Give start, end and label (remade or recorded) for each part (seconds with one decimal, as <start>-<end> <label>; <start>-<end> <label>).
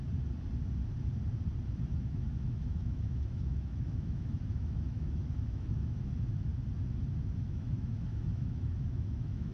0.0-1.9 recorded; 1.9-6.5 remade; 6.5-7.3 recorded; 7.3-9.5 remade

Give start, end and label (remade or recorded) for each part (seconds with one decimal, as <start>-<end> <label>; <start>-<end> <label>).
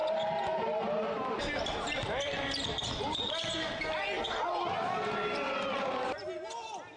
0.0-7.0 recorded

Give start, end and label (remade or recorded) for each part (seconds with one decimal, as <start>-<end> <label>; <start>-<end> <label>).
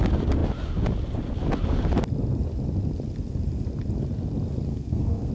0.0-4.7 recorded; 4.7-5.3 remade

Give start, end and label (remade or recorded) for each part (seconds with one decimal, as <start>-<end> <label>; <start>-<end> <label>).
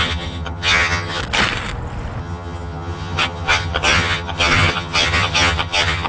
0.0-1.2 remade; 1.2-2.2 recorded; 2.2-6.1 remade